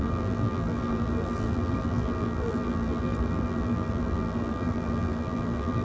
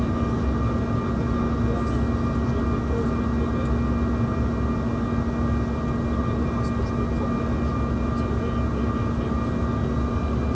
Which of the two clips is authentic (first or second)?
second